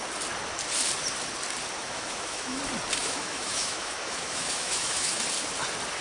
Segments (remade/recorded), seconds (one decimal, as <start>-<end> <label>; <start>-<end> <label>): 0.0-1.8 recorded; 1.8-2.6 remade; 2.6-3.0 recorded; 3.0-5.2 remade; 5.2-6.0 recorded